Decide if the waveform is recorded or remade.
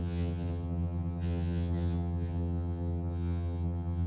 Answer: remade